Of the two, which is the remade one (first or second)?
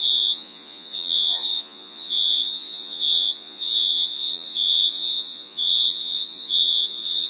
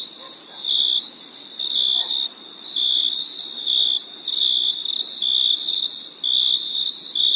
first